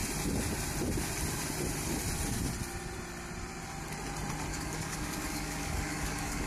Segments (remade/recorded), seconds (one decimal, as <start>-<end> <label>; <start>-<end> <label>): 0.0-4.5 recorded; 4.5-6.5 remade